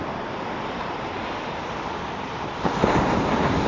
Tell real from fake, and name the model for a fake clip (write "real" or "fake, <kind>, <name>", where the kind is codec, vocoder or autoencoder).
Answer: fake, vocoder, BigVGAN v2